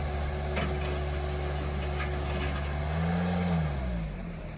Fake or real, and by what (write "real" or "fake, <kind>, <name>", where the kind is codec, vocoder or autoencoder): real